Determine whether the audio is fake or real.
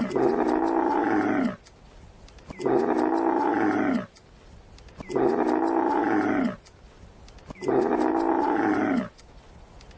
real